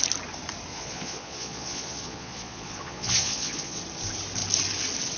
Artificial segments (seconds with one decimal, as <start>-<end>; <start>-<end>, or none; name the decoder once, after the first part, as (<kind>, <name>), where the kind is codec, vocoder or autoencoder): 0.7-3.8 (vocoder, Vocos)